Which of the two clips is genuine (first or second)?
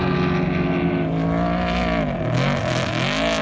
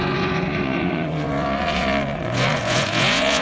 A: first